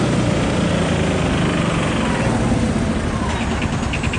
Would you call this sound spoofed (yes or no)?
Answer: no